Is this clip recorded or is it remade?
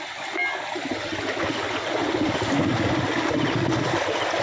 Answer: recorded